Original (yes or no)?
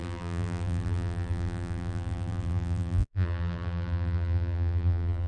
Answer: no